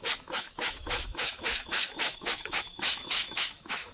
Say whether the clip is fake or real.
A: fake